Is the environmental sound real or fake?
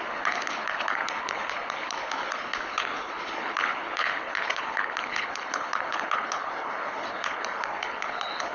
fake